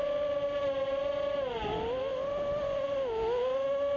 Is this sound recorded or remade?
recorded